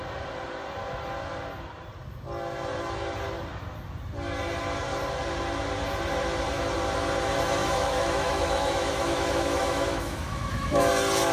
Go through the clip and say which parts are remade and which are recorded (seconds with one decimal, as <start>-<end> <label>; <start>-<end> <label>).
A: 0.0-7.6 recorded; 7.6-10.9 remade; 10.9-11.3 recorded

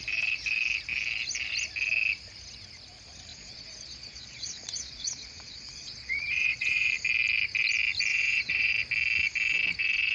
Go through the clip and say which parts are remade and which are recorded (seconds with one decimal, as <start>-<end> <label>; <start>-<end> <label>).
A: 0.0-3.3 recorded; 3.3-6.9 remade; 6.9-8.1 recorded; 8.1-8.7 remade; 8.7-10.1 recorded

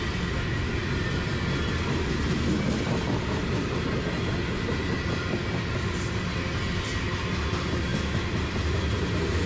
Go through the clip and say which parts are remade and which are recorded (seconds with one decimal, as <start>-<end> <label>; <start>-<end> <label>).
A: 0.0-9.5 recorded

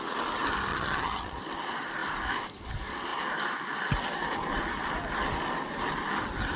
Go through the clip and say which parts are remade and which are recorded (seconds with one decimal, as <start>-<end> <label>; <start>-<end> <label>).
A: 0.0-0.7 recorded; 0.7-1.4 remade; 1.4-6.6 recorded